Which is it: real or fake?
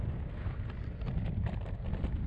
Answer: real